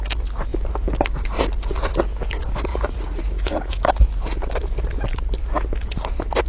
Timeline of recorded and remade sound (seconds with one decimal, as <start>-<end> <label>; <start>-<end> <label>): 0.0-2.7 recorded; 2.7-3.8 remade; 3.8-6.5 recorded